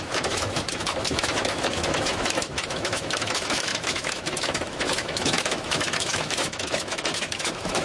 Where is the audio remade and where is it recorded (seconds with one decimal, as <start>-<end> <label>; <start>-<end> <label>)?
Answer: 0.0-7.8 remade